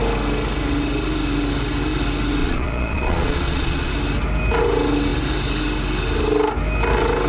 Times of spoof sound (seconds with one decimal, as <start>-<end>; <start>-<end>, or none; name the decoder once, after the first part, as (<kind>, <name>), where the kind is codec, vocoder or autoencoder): 2.4-3.9 (vocoder, Vocos)

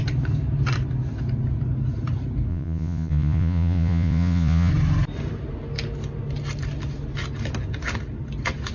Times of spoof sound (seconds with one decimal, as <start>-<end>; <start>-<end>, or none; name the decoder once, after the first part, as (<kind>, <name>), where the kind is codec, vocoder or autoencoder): 2.5-4.7 (vocoder, Vocos)

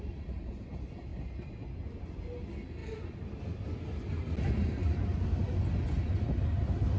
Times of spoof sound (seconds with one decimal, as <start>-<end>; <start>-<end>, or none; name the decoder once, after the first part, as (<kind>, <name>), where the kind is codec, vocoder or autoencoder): none

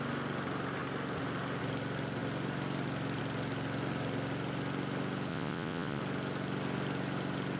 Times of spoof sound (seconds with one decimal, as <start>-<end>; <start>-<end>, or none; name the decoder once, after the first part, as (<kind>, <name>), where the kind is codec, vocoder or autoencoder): 5.3-6.0 (vocoder, Vocos)